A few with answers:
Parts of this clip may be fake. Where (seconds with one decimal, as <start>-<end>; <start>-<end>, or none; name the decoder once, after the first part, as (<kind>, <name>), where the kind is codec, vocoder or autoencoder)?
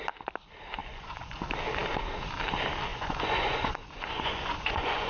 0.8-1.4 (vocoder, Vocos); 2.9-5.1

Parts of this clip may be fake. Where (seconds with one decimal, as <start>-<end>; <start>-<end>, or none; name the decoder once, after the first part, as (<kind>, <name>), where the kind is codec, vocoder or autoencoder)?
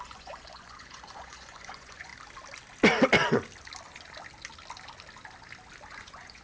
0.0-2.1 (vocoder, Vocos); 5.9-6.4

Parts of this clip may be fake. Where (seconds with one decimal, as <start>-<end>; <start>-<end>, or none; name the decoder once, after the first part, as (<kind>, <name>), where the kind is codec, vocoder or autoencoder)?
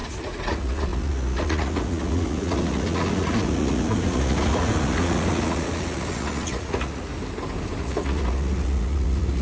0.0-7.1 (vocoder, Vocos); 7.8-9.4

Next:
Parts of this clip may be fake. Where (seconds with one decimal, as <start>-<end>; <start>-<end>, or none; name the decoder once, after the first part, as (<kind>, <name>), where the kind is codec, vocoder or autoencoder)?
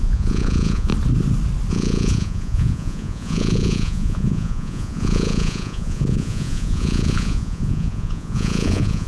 0.0-0.9 (vocoder, Vocos); 1.7-9.1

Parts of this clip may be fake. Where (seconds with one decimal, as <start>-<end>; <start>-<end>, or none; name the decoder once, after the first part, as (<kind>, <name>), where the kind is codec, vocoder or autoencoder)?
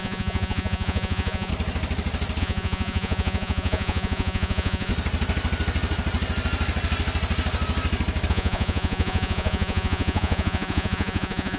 0.0-1.5 (vocoder, Vocos); 2.4-4.9; 8.3-11.6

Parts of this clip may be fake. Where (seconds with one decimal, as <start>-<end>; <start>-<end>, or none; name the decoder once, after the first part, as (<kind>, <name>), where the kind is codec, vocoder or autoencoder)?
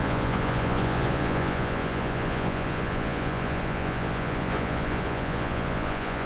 0.0-6.3 (vocoder, Vocos)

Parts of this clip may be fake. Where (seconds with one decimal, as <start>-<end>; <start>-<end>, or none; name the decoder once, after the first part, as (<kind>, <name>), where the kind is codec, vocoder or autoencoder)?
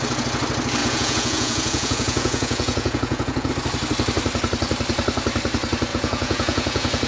0.8-3.5 (vocoder, Vocos); 5.9-7.1